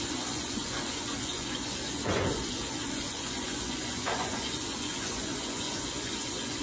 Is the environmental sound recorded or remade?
remade